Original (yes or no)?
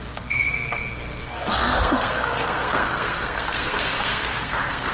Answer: no